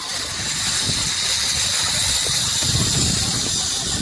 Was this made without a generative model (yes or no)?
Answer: yes